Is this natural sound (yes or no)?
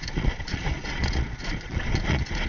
no